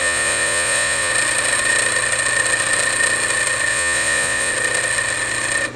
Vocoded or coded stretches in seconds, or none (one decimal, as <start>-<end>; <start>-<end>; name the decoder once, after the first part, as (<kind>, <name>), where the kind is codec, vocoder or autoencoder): 0.0-1.1 (vocoder, Vocos); 3.7-4.5